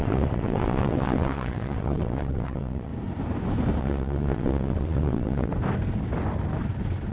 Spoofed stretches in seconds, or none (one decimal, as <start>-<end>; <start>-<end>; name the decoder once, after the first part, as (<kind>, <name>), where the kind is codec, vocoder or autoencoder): 0.0-2.9 (vocoder, WaveNeXt); 3.8-5.5